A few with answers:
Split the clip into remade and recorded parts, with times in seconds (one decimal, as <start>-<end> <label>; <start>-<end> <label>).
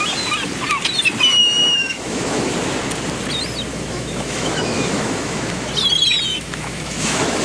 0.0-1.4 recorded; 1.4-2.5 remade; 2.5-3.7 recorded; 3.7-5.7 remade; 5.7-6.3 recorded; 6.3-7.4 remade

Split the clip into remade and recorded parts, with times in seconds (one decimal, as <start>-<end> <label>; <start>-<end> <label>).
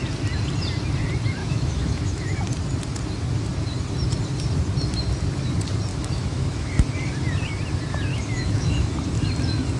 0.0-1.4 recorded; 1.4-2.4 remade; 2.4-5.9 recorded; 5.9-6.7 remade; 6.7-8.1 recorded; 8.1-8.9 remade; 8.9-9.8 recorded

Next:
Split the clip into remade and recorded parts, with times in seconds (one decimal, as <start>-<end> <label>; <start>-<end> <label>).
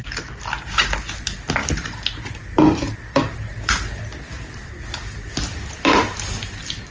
0.0-6.9 recorded